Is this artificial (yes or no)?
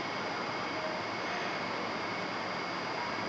no